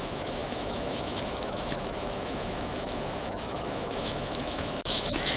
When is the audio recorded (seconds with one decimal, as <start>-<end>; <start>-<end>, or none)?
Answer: none